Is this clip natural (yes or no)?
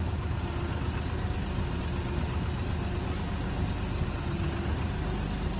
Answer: yes